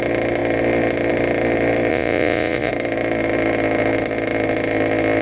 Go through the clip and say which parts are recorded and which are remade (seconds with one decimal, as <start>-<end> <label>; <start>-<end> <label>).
0.0-1.9 recorded; 1.9-2.7 remade; 2.7-5.2 recorded